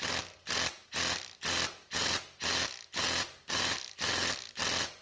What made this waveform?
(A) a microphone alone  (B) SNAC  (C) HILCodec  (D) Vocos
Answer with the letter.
A